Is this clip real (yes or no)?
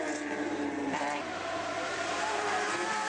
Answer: no